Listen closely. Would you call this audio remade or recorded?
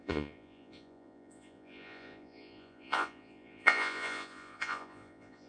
remade